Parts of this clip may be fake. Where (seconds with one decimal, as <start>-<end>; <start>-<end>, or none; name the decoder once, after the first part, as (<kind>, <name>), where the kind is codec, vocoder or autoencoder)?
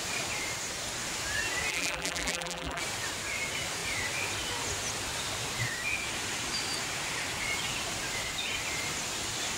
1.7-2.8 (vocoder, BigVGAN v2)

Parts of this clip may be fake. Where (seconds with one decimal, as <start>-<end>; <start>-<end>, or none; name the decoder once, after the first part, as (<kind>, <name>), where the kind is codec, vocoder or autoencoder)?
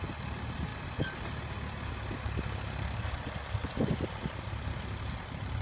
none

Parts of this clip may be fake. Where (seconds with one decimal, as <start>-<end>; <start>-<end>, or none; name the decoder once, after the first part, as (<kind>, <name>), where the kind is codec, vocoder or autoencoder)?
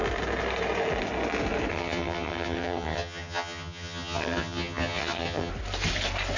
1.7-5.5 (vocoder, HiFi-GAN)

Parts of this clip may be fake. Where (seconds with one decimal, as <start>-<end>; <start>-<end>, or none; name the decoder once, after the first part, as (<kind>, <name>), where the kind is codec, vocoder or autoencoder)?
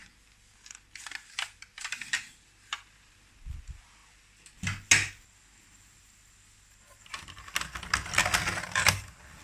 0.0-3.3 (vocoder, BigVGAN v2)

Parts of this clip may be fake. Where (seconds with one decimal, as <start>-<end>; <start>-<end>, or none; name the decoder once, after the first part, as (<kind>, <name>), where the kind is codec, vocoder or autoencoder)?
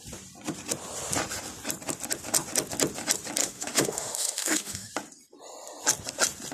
3.4-4.9 (autoencoder, DAC-VAE)